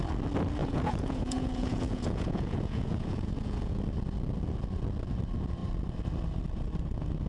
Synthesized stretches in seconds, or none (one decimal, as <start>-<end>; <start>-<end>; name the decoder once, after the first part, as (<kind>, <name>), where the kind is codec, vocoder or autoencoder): 0.6-3.8 (vocoder, Vocos)